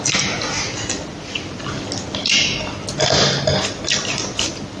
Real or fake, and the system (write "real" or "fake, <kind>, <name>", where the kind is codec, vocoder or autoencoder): real